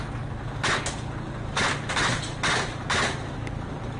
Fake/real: real